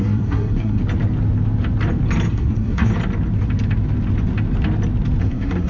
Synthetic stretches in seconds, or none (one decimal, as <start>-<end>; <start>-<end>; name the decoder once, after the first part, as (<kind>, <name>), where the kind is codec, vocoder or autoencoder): 0.0-0.8 (codec, SNAC); 2.3-2.9; 5.2-5.7